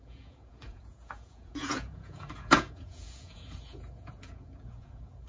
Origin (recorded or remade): remade